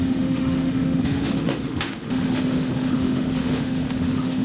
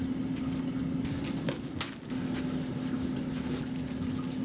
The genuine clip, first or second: second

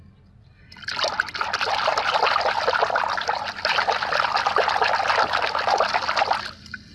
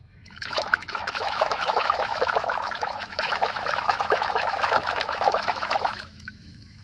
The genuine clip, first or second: first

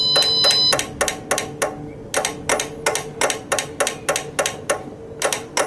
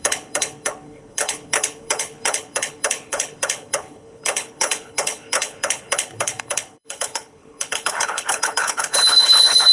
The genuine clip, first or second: first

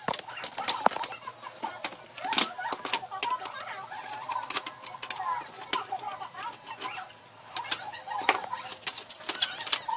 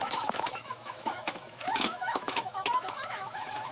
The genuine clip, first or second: first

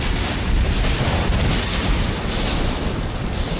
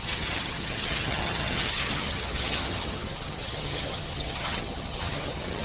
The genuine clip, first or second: first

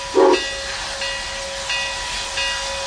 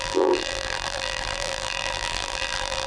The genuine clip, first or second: first